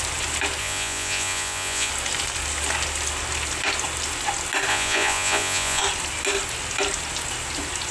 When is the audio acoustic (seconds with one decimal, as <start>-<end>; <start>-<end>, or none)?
0.0-0.6; 1.9-4.7; 5.8-7.9